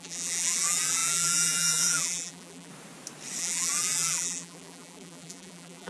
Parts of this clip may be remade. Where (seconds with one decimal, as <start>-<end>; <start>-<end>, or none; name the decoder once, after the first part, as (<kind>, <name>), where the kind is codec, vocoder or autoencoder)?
0.0-2.7 (vocoder, BigVGAN v2); 3.4-5.9